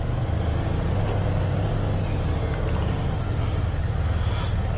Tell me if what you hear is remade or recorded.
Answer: recorded